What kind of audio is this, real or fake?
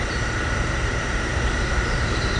fake